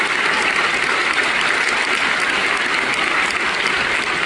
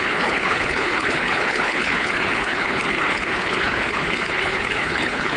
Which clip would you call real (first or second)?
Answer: first